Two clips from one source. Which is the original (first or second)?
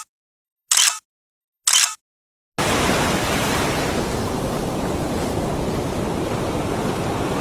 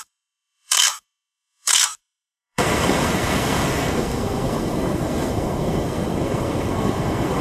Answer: first